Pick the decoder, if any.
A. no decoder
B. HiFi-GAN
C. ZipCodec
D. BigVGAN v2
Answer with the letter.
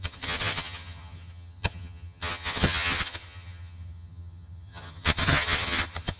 B